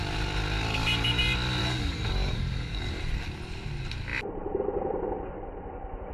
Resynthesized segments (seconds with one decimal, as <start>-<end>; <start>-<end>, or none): 0.7-1.2; 1.6-3.0